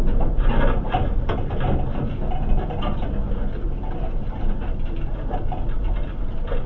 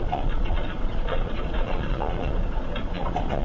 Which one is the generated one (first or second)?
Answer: second